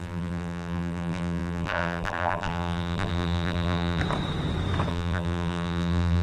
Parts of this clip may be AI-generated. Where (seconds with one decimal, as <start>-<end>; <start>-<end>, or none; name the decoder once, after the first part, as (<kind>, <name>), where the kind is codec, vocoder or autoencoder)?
0.0-4.0 (vocoder, BigVGAN v2); 4.9-6.2